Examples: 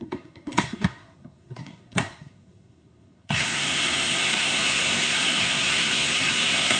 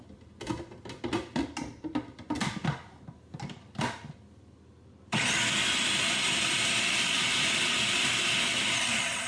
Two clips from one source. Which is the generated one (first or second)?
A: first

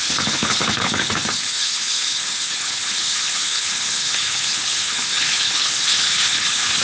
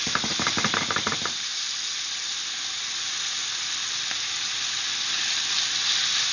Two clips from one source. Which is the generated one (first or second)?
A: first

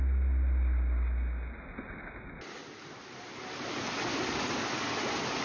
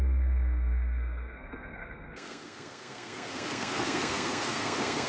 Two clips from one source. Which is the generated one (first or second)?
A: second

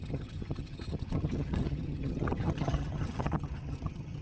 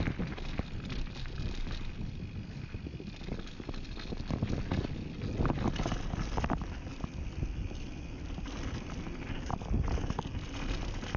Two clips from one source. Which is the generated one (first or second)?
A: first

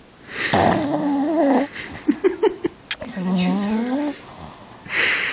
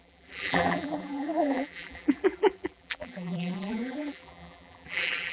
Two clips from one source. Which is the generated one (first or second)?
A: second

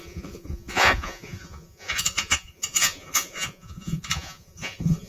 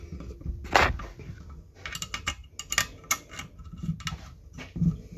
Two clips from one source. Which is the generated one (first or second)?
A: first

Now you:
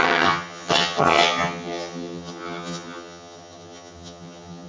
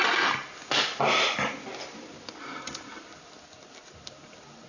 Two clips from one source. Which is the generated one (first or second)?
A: first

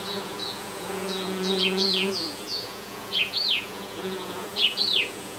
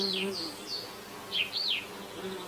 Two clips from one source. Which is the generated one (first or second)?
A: first